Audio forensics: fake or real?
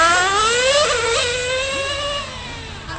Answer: real